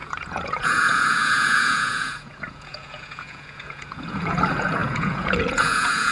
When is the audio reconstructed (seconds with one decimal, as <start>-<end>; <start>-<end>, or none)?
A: 0.0-6.1